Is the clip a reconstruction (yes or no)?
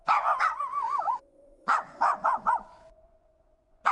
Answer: yes